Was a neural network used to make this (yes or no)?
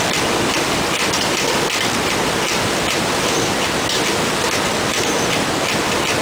no